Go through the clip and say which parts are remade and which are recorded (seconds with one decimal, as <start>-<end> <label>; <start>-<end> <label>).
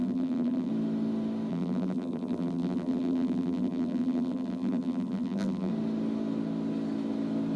0.0-0.7 remade; 0.7-1.5 recorded; 1.5-5.7 remade; 5.7-7.6 recorded